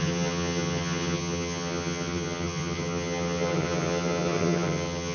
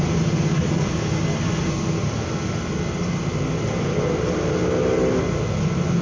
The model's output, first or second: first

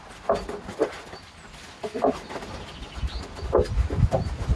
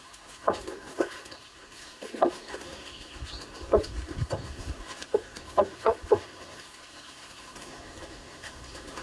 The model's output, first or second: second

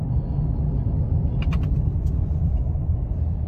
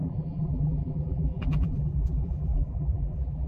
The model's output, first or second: second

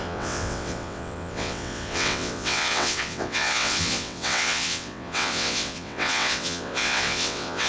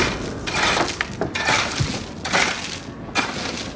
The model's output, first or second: first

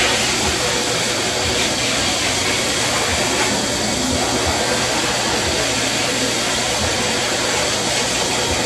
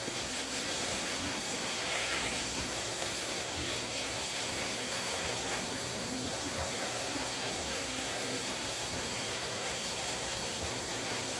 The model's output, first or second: second